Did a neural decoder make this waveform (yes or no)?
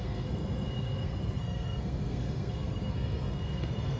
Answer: yes